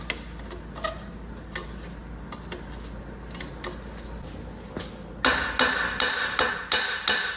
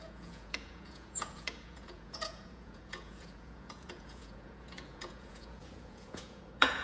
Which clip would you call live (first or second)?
first